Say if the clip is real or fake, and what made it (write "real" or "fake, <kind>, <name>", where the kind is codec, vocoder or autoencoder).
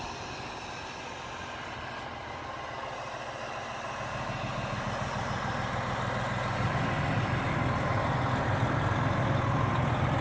real